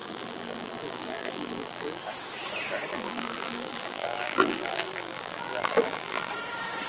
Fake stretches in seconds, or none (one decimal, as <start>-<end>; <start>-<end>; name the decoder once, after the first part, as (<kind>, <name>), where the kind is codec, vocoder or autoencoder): 0.0-2.0 (vocoder, BigVGAN v2); 2.9-6.3